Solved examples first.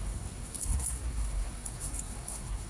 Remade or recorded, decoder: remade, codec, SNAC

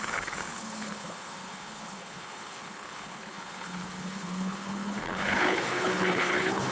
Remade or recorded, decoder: remade, codec, HILCodec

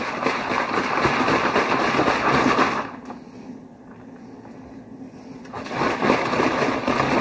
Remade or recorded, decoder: recorded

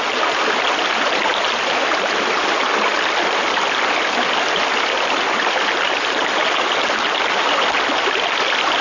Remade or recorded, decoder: recorded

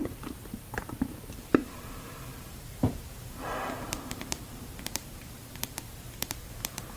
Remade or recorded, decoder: remade, vocoder, BigVGAN v2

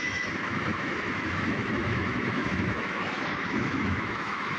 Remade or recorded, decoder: remade, autoencoder, DAC-VAE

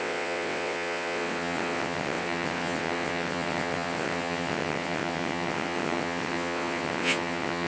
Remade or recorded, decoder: remade, vocoder, WaveNeXt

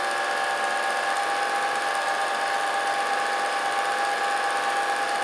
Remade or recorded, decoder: recorded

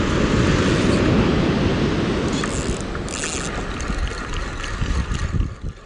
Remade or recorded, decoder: recorded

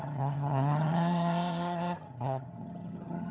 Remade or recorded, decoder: remade, vocoder, HiFi-GAN